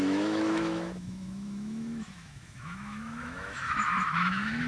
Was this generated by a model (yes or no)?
yes